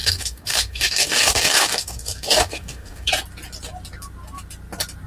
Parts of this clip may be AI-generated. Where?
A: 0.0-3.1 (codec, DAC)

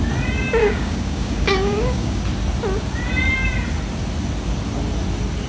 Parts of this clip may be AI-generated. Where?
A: 0.6-2.2 (codec, DAC)

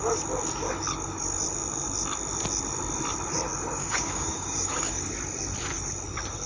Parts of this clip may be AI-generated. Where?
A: 3.8-5.1 (codec, DAC)

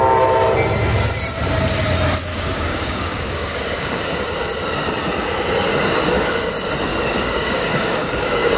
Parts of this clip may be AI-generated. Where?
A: 2.3-4.2 (codec, DAC); 6.9-8.6

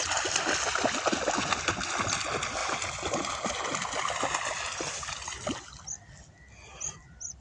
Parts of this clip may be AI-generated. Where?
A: none

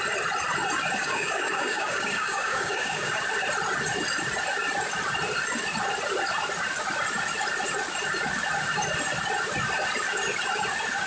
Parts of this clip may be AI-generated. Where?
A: 1.0-3.2 (codec, DAC)